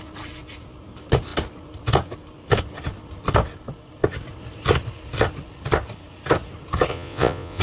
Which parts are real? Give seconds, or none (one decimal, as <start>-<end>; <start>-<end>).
0.0-6.9